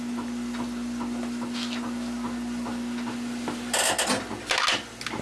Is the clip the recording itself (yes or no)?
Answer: yes